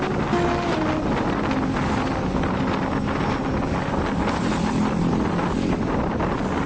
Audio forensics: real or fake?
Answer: real